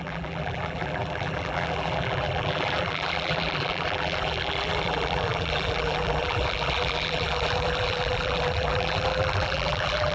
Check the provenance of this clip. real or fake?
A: fake